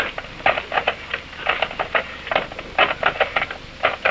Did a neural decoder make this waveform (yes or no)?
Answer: no